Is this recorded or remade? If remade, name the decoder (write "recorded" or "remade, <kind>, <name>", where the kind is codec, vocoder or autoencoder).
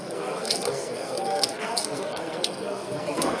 remade, codec, SNAC